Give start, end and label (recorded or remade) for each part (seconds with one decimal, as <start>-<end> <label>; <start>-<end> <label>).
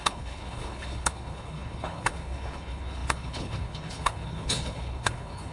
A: 0.0-5.5 remade